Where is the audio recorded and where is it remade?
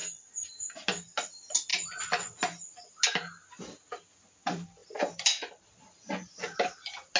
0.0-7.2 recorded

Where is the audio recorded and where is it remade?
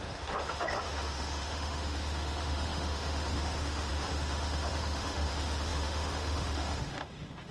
0.0-7.5 remade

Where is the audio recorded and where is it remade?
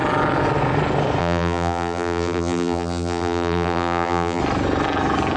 0.0-1.2 recorded; 1.2-4.4 remade; 4.4-5.4 recorded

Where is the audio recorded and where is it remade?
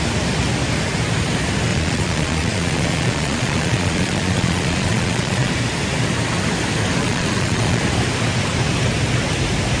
0.0-1.7 recorded; 1.7-5.5 remade; 5.5-7.0 recorded; 7.0-7.8 remade; 7.8-9.8 recorded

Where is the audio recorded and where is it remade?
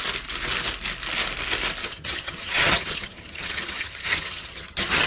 0.0-1.8 recorded; 1.8-5.1 remade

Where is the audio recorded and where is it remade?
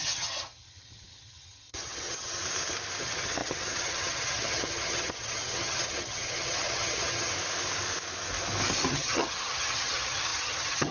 0.0-2.4 remade; 2.4-3.0 recorded; 3.0-7.3 remade; 7.3-8.9 recorded; 8.9-10.9 remade